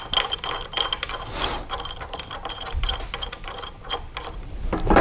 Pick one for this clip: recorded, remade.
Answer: recorded